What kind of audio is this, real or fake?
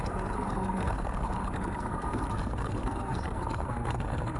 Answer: fake